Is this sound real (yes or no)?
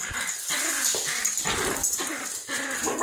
yes